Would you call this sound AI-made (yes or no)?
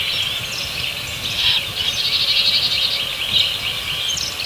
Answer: no